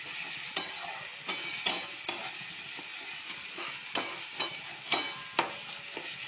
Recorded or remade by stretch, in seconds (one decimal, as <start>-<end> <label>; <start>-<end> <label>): 0.0-6.3 recorded